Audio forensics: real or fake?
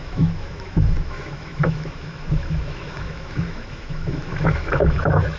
fake